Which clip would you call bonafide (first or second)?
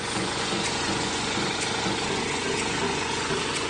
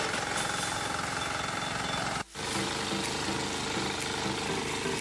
second